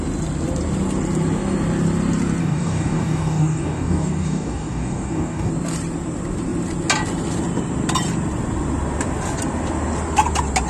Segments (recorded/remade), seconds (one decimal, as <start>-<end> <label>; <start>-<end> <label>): 0.0-2.4 recorded; 2.4-5.5 remade; 5.5-10.7 recorded

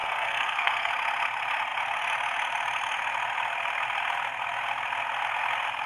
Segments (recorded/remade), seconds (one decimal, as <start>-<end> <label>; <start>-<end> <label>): 0.0-0.9 remade; 0.9-5.9 recorded

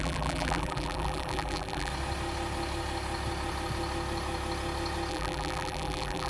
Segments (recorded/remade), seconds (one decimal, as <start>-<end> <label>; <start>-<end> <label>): 0.0-1.9 remade; 1.9-5.1 recorded; 5.1-6.3 remade

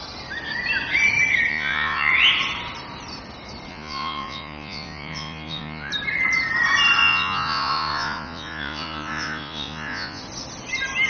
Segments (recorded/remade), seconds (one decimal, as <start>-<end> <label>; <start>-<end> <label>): 0.0-1.5 recorded; 1.5-2.1 remade; 2.1-3.7 recorded; 3.7-5.9 remade; 5.9-7.0 recorded; 7.0-10.2 remade; 10.2-11.1 recorded

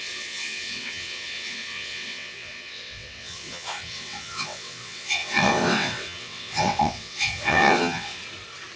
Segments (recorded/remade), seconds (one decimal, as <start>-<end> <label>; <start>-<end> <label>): 0.0-8.2 remade; 8.2-8.8 recorded

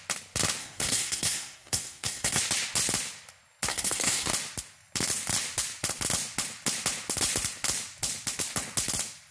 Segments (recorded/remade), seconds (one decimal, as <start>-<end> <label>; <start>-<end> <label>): 0.0-0.6 recorded; 0.6-2.4 remade; 2.4-3.7 recorded; 3.7-4.3 remade; 4.3-9.3 recorded

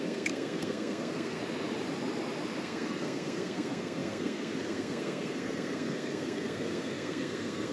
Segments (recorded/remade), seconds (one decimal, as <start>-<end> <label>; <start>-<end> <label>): 0.0-1.4 remade; 1.4-2.6 recorded; 2.6-7.7 remade

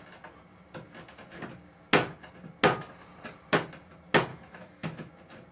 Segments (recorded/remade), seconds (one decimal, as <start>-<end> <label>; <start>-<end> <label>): 0.0-4.3 recorded; 4.3-5.1 remade; 5.1-5.5 recorded